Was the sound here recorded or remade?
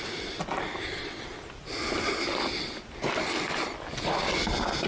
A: recorded